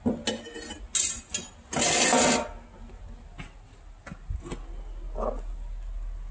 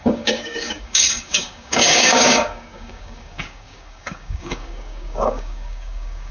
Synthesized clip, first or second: second